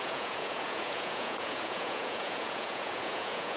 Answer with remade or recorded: remade